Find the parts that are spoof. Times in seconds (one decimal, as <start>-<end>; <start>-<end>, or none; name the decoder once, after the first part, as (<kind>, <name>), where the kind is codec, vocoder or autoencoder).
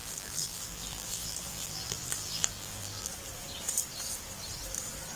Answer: 0.0-3.1 (vocoder, BigVGAN v2)